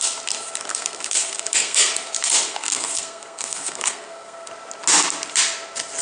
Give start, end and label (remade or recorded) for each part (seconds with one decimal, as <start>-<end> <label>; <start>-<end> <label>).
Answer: 0.0-0.7 recorded; 0.7-1.9 remade; 1.9-2.5 recorded; 2.5-4.5 remade; 4.5-6.0 recorded